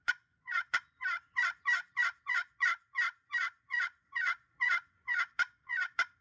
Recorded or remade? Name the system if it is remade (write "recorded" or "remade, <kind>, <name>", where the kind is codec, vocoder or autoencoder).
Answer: remade, vocoder, Vocos